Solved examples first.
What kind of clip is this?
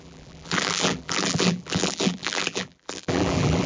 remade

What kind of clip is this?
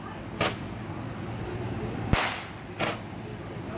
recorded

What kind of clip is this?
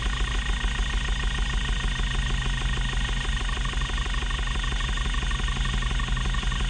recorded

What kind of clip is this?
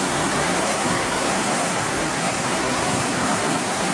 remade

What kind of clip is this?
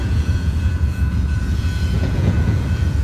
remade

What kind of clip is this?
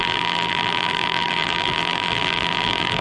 remade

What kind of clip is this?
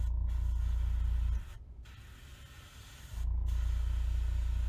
recorded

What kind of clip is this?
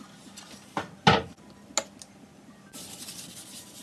recorded